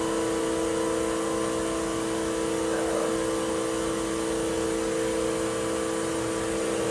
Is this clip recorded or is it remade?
recorded